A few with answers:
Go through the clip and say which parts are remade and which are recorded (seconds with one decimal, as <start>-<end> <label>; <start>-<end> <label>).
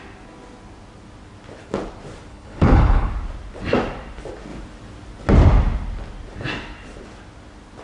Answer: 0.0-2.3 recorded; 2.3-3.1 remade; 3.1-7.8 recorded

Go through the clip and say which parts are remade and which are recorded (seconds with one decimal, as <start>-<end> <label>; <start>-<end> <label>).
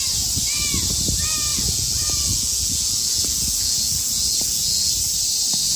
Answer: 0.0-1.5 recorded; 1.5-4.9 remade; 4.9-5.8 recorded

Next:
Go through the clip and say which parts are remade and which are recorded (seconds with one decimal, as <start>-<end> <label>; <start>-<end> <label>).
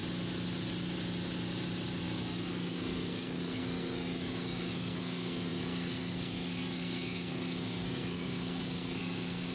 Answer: 0.0-2.0 recorded; 2.0-9.5 remade